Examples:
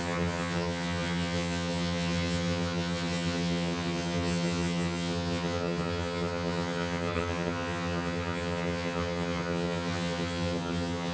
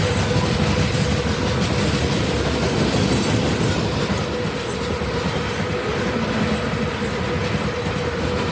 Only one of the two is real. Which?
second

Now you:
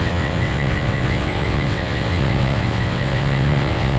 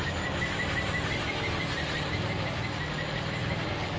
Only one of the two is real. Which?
second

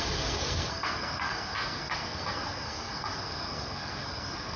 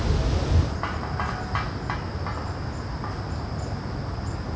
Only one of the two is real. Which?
second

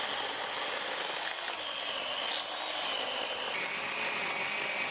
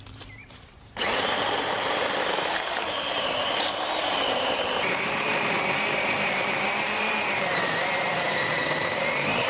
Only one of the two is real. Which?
first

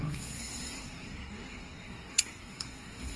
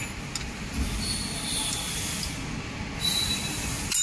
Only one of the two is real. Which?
second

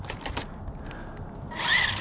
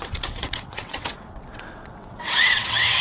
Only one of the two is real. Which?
first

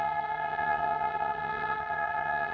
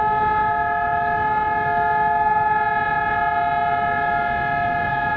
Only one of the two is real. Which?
second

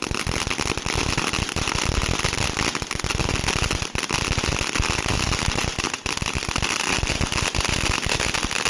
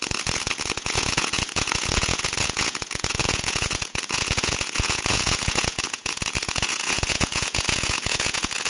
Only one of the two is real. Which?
first